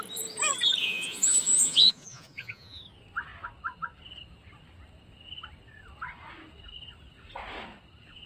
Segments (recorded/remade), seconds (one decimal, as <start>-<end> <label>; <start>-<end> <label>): 0.0-0.8 recorded; 0.8-2.8 remade; 2.8-8.3 recorded